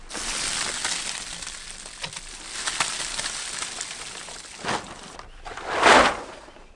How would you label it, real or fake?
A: real